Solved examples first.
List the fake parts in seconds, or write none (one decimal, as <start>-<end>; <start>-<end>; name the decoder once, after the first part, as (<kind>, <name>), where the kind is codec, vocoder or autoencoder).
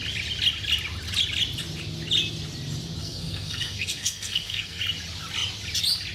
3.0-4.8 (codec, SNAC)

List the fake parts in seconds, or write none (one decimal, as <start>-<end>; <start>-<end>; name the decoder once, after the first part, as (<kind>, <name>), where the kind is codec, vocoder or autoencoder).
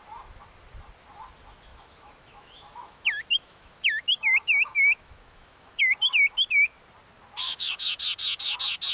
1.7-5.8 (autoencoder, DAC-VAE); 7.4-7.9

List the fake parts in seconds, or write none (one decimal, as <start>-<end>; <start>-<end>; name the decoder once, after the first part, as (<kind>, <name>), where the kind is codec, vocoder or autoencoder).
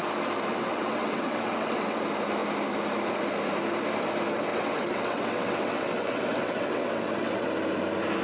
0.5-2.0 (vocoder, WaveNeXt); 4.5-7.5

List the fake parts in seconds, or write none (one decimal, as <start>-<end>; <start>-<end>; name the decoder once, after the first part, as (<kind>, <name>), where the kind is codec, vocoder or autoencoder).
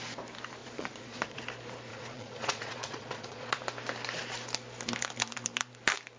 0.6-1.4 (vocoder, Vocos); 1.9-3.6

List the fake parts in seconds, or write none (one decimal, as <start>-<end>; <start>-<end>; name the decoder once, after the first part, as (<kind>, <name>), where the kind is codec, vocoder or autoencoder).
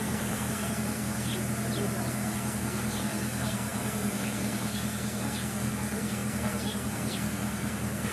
0.0-1.3 (codec, SNAC); 2.1-8.1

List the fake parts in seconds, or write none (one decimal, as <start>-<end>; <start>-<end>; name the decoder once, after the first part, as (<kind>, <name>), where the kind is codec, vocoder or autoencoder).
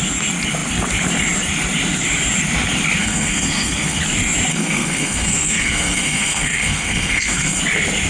3.0-4.0 (codec, SNAC); 4.5-7.6